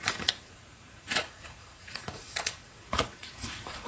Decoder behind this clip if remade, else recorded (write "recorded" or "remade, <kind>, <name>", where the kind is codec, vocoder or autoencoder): remade, vocoder, Vocos